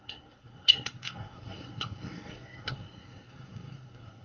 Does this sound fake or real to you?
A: fake